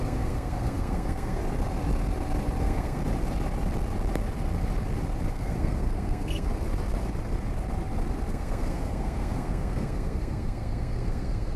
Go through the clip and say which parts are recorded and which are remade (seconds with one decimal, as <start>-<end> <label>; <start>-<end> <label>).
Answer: 0.0-1.4 remade; 1.4-2.6 recorded; 2.6-3.0 remade; 3.0-5.3 recorded; 5.3-6.5 remade; 6.5-8.3 recorded; 8.3-11.6 remade